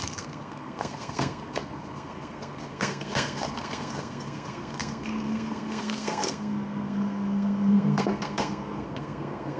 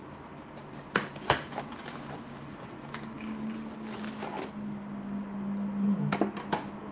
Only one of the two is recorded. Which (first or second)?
second